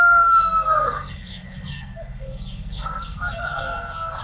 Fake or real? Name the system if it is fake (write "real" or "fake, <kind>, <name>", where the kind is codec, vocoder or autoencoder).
fake, codec, SNAC